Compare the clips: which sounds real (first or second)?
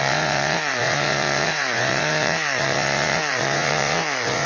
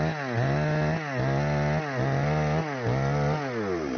second